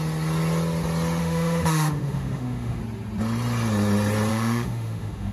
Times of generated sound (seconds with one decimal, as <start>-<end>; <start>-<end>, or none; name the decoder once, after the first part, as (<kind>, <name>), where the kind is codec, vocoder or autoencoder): 1.2-2.8 (autoencoder, DAC-VAE); 4.3-5.3